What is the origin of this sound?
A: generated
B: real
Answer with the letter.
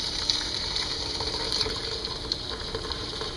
A